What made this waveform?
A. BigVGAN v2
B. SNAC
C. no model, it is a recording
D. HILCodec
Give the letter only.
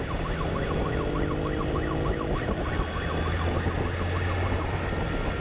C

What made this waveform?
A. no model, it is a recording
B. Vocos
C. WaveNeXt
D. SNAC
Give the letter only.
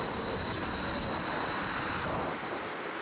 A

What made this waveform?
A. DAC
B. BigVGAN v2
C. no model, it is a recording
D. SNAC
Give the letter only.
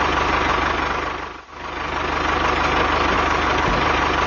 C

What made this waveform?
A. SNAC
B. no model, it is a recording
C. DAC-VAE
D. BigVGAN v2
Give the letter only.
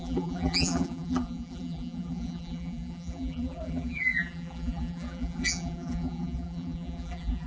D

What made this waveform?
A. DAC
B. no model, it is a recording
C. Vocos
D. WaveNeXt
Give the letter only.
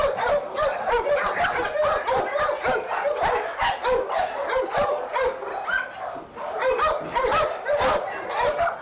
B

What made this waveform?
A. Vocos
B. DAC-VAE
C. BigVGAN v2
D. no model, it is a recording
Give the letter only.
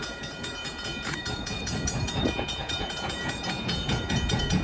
A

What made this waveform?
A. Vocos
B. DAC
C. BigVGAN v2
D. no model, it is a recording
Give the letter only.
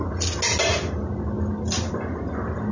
D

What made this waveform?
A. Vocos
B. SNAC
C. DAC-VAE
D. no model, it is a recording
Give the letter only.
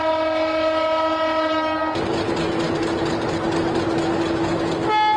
D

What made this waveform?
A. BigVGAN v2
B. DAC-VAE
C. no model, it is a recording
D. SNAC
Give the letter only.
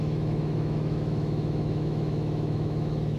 B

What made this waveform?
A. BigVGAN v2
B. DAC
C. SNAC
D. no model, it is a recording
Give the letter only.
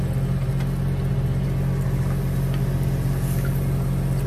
D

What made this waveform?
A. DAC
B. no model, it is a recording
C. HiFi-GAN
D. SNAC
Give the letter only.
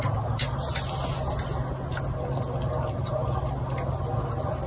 B